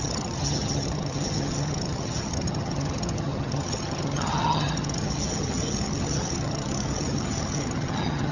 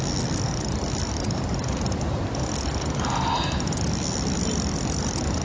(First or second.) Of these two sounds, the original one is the second